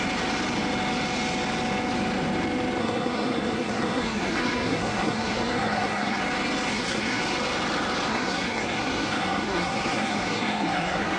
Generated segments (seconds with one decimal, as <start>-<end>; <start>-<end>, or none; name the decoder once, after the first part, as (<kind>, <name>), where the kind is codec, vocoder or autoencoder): 2.8-6.2 (codec, SNAC); 6.7-7.2; 8.1-11.2